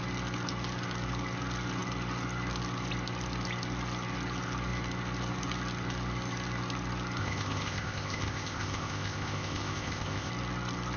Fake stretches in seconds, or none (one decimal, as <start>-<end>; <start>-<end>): 7.2-10.3